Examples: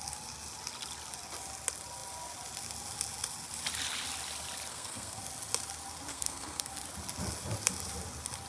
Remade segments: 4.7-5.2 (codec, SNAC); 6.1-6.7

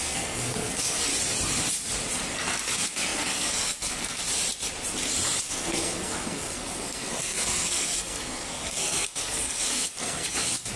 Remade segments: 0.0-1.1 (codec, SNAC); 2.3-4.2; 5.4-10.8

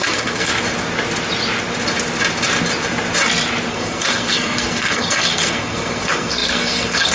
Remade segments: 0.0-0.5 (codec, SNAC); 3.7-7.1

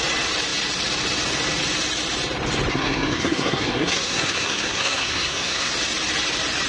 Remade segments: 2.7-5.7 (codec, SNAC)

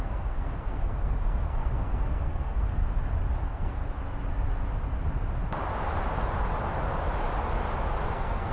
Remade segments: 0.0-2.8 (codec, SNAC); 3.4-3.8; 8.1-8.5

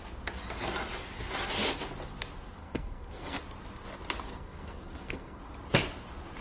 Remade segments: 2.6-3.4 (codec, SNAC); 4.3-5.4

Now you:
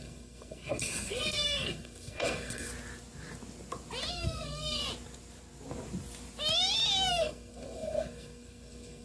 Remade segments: 0.0-2.7 (codec, SNAC); 4.1-4.8; 7.1-9.0